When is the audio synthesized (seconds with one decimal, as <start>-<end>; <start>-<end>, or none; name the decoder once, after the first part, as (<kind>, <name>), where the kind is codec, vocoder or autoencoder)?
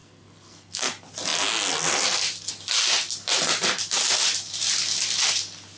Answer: 0.0-0.9 (codec, SNAC)